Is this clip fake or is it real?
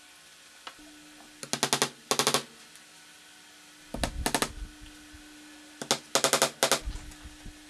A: real